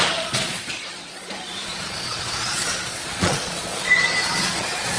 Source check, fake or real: fake